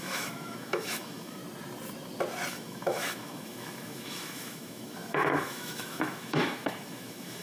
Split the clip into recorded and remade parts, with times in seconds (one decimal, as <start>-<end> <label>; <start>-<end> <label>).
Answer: 0.0-1.4 remade; 1.4-2.5 recorded; 2.5-7.4 remade